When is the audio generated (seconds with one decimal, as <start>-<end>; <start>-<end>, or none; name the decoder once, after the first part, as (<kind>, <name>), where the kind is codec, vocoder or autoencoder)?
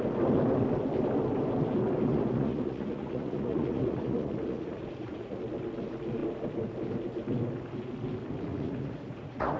2.1-5.4 (vocoder, Vocos); 8.5-9.6